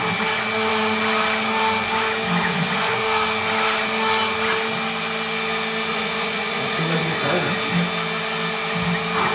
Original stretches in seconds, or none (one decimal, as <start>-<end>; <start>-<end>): 0.0-2.5; 3.0-5.9; 7.3-9.3